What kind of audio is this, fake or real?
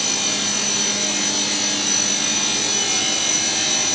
real